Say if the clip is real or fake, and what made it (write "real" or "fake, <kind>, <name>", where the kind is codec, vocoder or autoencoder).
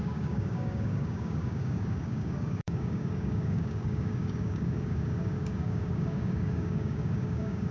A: fake, codec, DAC